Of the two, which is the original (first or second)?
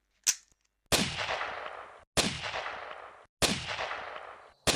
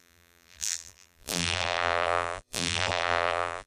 first